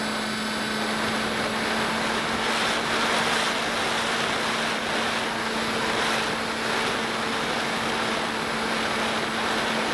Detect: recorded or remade recorded